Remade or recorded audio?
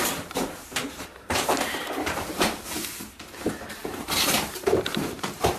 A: remade